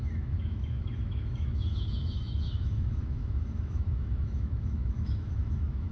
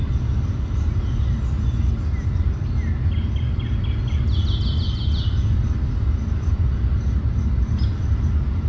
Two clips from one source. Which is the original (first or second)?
second